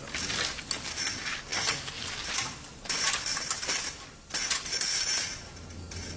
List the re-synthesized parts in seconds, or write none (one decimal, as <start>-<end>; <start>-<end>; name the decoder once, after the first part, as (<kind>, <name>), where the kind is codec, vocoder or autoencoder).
none